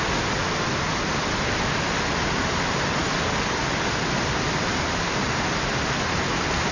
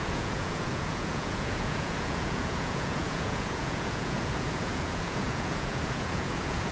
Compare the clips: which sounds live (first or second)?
first